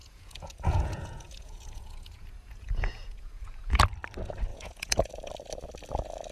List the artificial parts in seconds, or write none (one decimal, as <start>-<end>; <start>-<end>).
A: 0.0-3.8; 4.5-5.1